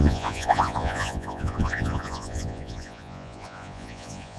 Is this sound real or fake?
fake